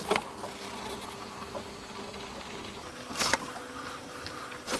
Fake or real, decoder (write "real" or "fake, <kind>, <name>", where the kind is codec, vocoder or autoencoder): real